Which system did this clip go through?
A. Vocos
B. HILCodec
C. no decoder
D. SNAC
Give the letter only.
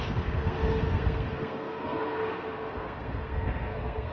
D